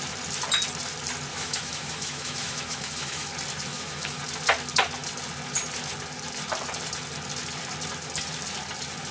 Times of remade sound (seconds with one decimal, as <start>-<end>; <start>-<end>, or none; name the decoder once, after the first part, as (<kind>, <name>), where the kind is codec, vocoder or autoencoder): 1.3-3.3 (autoencoder, DAC-VAE); 3.7-4.2